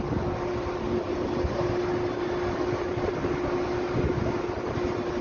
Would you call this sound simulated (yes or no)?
no